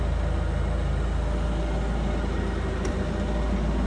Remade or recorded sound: recorded